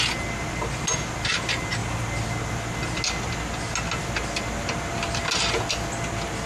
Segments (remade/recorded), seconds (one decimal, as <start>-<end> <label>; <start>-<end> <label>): 0.0-6.5 recorded